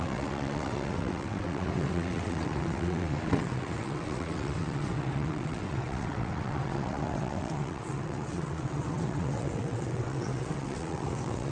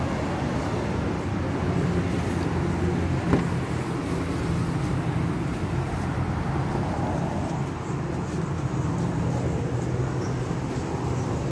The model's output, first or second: first